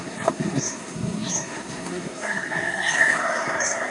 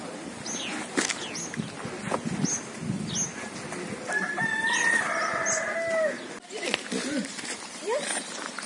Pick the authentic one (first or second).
second